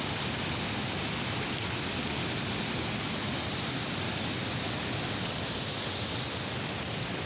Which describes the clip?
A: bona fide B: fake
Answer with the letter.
A